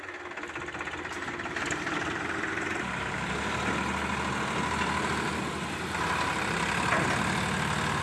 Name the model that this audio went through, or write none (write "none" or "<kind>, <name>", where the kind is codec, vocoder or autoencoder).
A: none